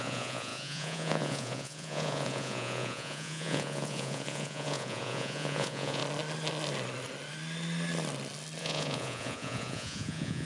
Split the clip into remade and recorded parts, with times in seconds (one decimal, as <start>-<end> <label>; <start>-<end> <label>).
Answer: 0.0-6.0 remade; 6.0-8.6 recorded; 8.6-10.5 remade